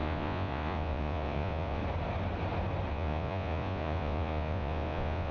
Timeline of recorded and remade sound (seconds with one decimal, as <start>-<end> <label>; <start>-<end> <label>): 0.0-1.8 remade; 1.8-2.9 recorded; 2.9-5.3 remade

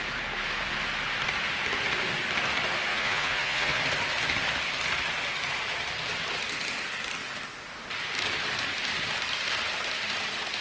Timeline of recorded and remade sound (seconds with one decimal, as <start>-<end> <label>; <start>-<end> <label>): 0.0-2.9 recorded; 2.9-3.8 remade; 3.8-10.6 recorded

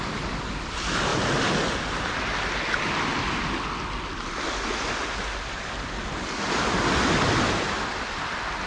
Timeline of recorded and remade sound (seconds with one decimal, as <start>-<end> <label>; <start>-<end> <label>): 0.0-8.7 recorded

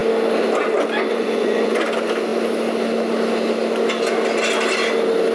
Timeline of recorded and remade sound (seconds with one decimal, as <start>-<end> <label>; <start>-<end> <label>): 0.0-1.1 recorded; 1.1-1.8 remade; 1.8-5.3 recorded

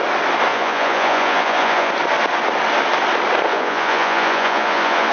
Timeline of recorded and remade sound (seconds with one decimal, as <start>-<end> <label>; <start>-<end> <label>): 0.0-0.5 recorded; 0.5-1.9 remade; 1.9-3.5 recorded; 3.5-5.1 remade

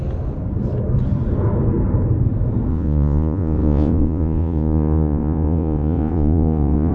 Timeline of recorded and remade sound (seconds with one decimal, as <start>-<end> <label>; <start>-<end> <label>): 0.0-2.7 recorded; 2.7-6.9 remade

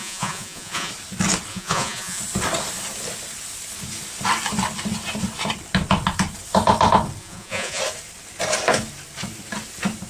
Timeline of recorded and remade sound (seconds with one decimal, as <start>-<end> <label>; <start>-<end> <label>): 0.0-0.9 remade; 0.9-1.5 recorded; 1.5-2.2 remade; 2.2-7.2 recorded; 7.2-7.8 remade; 7.8-10.1 recorded

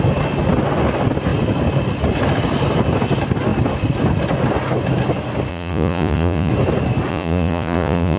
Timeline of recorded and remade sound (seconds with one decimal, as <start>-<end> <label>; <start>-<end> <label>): 0.0-5.5 recorded; 5.5-6.5 remade; 6.5-7.1 recorded; 7.1-8.2 remade